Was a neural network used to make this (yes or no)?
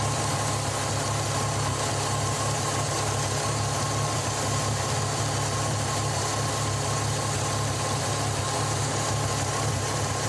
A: no